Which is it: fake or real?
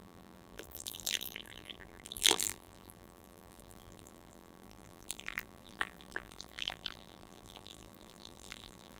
fake